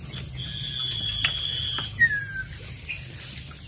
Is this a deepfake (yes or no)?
no